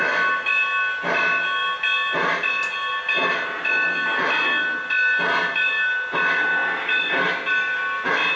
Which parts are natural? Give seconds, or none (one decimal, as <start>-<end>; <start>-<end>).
0.0-8.4